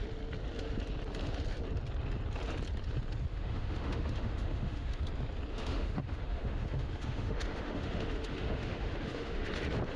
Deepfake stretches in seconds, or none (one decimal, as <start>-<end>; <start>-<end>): 3.3-5.0; 5.5-9.5